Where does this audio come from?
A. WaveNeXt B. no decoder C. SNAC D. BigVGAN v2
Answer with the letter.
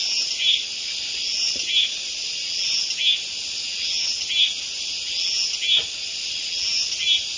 B